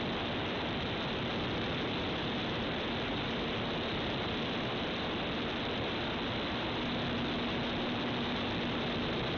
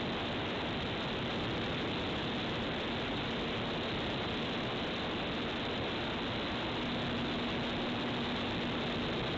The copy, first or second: first